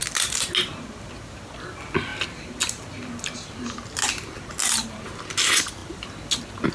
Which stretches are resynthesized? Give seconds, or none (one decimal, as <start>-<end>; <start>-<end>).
none